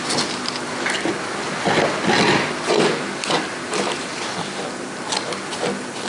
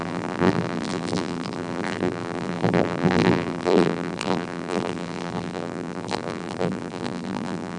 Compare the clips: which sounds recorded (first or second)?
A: first